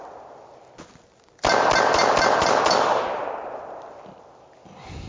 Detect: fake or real real